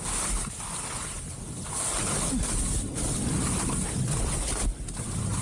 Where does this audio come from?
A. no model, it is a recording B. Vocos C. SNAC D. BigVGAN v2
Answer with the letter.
A